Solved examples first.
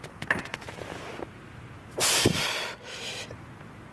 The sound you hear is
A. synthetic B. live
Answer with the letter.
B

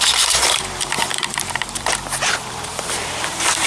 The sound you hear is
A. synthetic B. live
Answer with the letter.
A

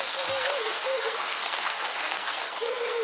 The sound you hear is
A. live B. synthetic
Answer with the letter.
B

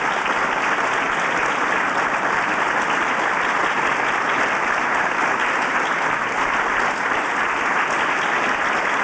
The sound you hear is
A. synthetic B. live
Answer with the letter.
B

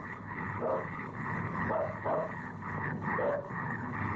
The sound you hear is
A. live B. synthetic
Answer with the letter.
B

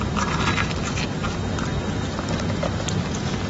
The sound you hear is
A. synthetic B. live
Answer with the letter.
B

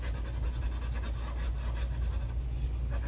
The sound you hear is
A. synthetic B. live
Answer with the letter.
B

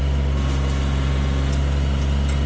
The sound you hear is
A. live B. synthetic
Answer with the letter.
A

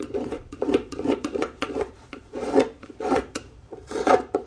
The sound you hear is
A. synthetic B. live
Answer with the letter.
A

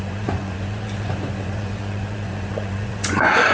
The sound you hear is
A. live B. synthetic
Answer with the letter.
B